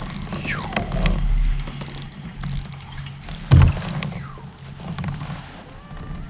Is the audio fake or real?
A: real